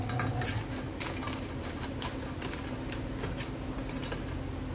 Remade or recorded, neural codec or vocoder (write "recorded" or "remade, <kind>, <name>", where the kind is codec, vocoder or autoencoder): recorded